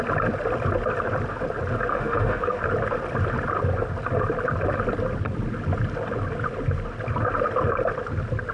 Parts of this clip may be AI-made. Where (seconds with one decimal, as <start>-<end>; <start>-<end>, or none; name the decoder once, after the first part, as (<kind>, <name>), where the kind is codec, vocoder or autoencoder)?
1.9-2.6 (autoencoder, DAC-VAE)

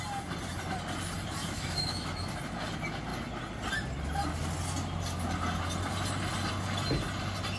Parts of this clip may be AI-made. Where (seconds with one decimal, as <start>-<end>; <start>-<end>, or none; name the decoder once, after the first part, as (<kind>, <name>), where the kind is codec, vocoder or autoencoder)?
1.4-2.3 (autoencoder, DAC-VAE)

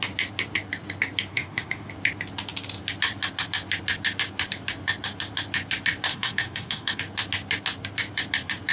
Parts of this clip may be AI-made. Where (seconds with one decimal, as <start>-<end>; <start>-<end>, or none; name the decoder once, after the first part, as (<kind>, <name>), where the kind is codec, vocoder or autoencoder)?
1.3-1.9 (autoencoder, DAC-VAE); 6.1-7.0

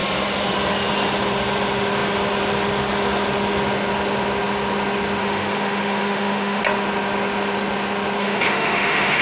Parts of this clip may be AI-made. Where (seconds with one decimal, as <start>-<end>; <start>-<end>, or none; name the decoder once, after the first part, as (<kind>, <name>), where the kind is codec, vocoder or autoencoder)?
5.2-6.6 (autoencoder, DAC-VAE); 8.2-9.2

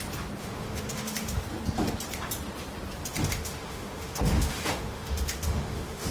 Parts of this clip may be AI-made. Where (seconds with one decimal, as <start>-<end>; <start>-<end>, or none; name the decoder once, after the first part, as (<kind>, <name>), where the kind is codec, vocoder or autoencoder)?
0.4-1.4 (autoencoder, DAC-VAE); 3.3-6.1

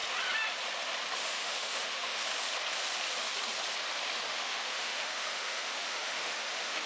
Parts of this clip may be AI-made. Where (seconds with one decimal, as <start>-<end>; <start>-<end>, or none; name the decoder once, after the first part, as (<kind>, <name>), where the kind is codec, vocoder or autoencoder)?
1.2-2.3 (autoencoder, DAC-VAE); 4.3-6.9

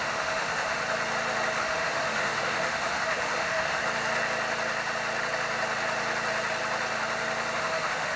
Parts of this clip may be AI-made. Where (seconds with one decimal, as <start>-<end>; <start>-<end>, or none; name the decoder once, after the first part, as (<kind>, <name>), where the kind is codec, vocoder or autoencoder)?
0.0-0.8 (autoencoder, DAC-VAE); 1.6-3.8; 7.6-8.2